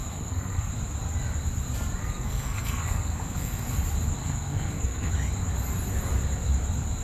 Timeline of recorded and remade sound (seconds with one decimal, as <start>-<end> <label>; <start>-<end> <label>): 0.0-0.7 remade; 0.7-2.0 recorded; 2.0-3.7 remade; 3.7-4.2 recorded; 4.2-5.1 remade; 5.1-7.0 recorded